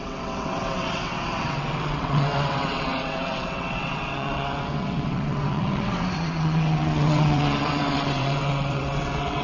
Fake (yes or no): yes